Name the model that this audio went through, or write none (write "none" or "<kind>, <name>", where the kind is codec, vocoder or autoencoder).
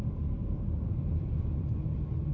vocoder, BigVGAN v2